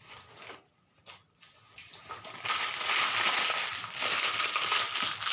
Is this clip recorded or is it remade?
recorded